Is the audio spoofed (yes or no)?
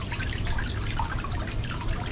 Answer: no